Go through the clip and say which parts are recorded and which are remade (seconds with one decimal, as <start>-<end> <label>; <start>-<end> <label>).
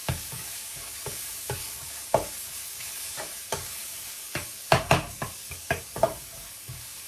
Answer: 0.0-7.1 remade